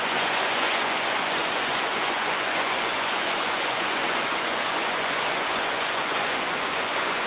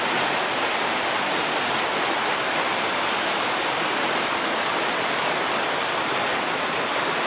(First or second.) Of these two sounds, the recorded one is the second